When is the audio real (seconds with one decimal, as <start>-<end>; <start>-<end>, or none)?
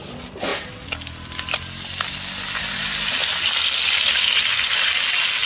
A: 0.0-5.5